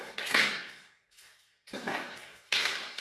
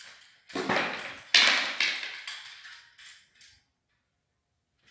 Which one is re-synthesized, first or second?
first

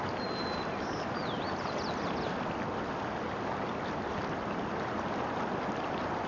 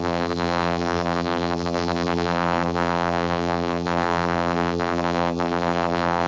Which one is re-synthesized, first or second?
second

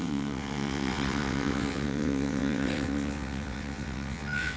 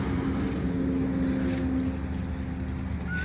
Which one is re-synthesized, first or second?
first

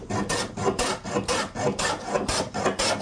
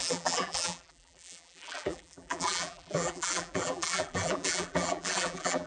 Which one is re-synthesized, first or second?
second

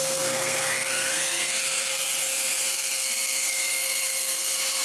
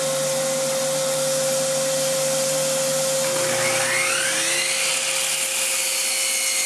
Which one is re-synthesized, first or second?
first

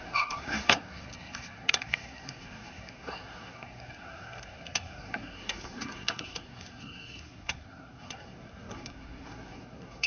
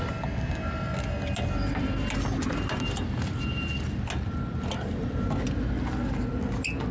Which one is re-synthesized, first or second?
first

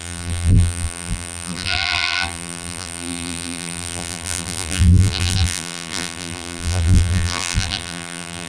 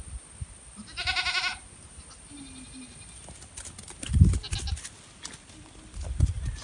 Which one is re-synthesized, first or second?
first